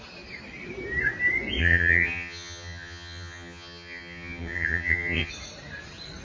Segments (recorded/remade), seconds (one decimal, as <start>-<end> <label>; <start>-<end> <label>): 0.0-1.6 recorded; 1.6-5.3 remade; 5.3-6.2 recorded